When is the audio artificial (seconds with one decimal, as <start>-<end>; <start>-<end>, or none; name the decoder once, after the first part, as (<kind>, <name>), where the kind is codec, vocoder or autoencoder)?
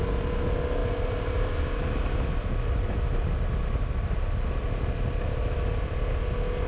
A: 0.8-1.6 (vocoder, BigVGAN v2)